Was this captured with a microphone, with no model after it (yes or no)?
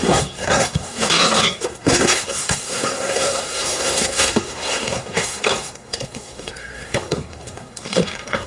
no